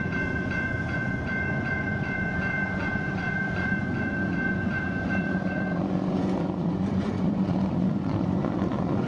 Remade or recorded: remade